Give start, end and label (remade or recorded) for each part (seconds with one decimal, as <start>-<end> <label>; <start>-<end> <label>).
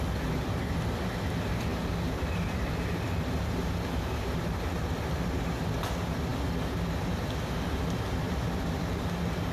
0.0-9.5 recorded